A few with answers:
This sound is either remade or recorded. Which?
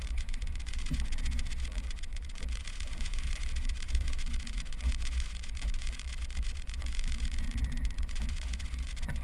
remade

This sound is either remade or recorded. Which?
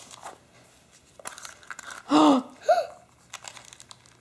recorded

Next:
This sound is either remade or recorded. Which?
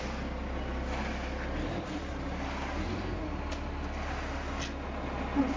recorded